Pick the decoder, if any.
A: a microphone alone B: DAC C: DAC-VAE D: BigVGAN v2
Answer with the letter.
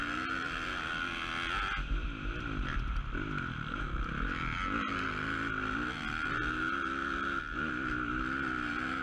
A